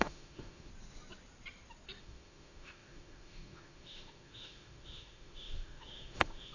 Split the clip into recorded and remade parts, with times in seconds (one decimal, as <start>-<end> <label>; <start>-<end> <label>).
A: 0.0-0.7 remade; 0.7-2.0 recorded; 2.0-6.5 remade